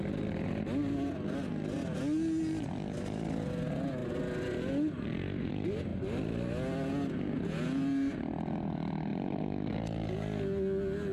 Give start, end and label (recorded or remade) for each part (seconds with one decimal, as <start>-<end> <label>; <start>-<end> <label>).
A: 0.0-9.1 recorded; 9.1-9.7 remade; 9.7-11.1 recorded